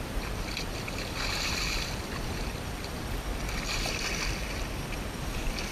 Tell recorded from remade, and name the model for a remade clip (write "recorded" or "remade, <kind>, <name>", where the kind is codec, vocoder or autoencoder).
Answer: recorded